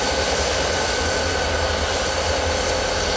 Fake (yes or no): no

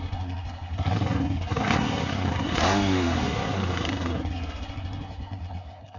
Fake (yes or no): yes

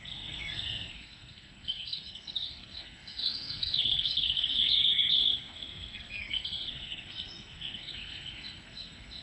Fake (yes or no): yes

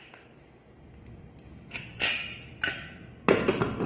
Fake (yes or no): no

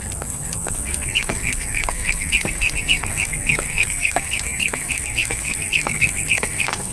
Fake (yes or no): yes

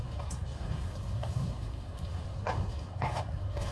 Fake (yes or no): yes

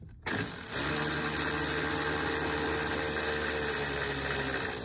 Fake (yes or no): no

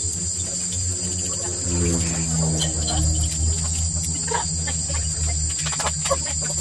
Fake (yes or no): no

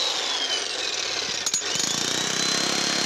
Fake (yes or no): no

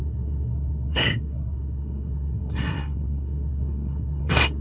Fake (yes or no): yes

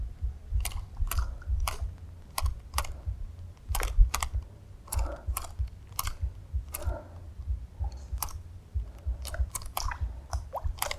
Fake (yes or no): no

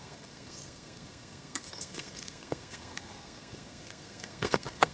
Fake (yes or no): yes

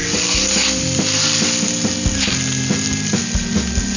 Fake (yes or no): no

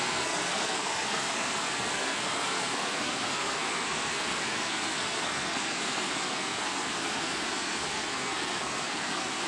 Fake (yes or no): yes